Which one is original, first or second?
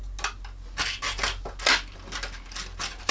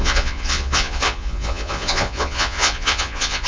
first